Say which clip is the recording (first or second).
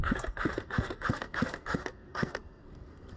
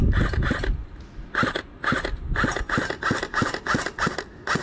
second